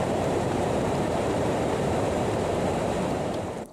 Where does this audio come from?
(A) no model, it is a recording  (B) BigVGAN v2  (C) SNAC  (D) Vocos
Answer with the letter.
B